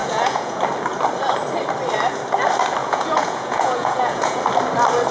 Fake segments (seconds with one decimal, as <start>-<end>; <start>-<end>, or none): 0.0-0.6; 2.8-4.4